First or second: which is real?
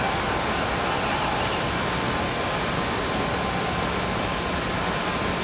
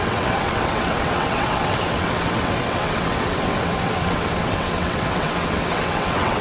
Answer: first